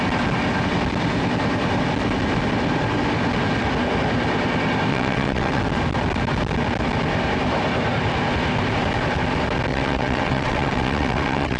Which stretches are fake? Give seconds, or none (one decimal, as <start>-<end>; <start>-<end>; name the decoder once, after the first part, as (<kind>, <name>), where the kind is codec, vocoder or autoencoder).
4.9-5.6 (vocoder, WaveNeXt); 9.7-11.6

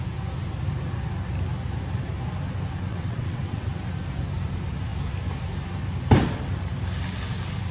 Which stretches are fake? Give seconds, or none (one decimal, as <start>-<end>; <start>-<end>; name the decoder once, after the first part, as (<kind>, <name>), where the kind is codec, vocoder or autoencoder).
2.9-3.8 (vocoder, WaveNeXt)

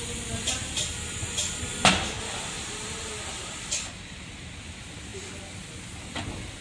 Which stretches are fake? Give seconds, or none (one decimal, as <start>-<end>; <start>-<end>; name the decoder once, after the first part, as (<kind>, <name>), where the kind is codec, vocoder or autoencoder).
none

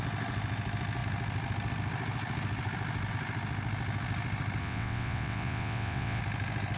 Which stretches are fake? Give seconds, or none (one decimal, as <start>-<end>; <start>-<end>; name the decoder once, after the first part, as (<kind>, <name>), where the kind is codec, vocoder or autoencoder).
4.6-6.2 (vocoder, WaveNeXt)

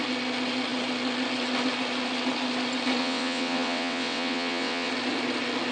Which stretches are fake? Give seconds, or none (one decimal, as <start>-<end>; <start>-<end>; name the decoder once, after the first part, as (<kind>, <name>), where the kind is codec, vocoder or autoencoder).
3.0-4.9 (vocoder, WaveNeXt)

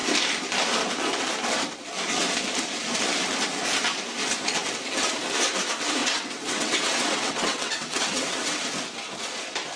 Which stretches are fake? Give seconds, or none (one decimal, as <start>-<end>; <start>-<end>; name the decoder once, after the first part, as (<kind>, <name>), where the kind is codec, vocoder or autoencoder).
6.0-8.6 (vocoder, WaveNeXt)

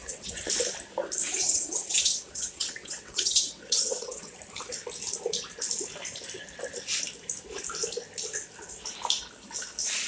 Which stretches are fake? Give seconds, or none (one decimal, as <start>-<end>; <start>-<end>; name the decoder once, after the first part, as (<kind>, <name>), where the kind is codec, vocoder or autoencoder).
0.0-0.5 (vocoder, WaveNeXt); 1.2-4.4

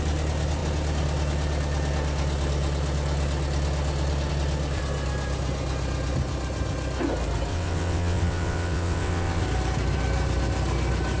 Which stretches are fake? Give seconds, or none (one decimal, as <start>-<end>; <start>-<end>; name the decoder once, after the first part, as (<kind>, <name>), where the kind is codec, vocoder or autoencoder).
7.5-9.4 (vocoder, WaveNeXt)